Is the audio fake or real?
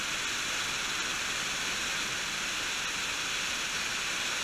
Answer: real